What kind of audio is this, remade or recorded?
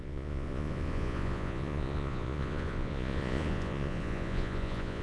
remade